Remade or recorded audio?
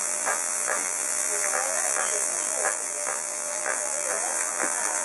remade